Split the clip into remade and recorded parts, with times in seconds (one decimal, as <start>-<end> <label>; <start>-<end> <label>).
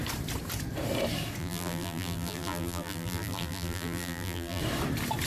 0.0-1.4 recorded; 1.4-4.6 remade; 4.6-5.3 recorded